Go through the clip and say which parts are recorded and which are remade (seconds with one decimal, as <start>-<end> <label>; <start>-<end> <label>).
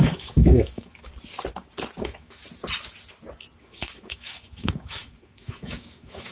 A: 0.0-1.1 remade; 1.1-2.0 recorded; 2.0-2.4 remade; 2.4-3.6 recorded; 3.6-6.3 remade